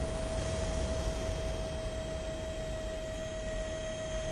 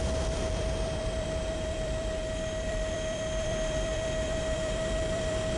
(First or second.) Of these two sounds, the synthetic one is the second